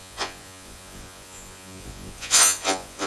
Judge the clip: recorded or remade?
remade